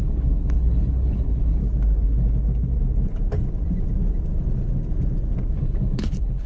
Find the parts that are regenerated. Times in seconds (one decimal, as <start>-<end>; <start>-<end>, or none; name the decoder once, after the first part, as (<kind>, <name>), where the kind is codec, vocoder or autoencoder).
0.0-1.6 (codec, HILCodec); 5.5-6.5